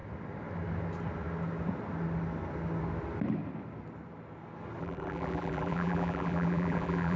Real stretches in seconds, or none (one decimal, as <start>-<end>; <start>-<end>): 0.0-4.8